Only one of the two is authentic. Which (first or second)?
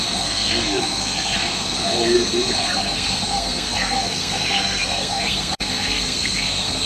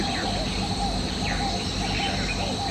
second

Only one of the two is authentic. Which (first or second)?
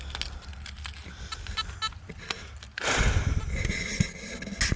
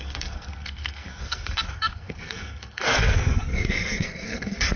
first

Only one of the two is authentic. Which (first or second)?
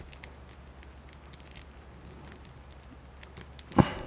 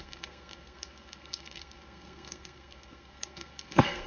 first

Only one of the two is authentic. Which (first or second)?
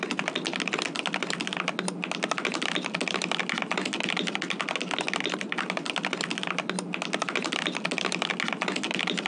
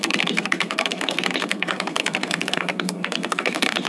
first